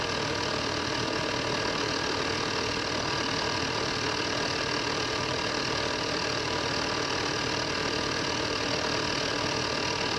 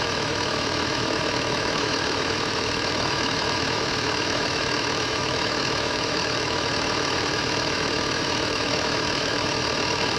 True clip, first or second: first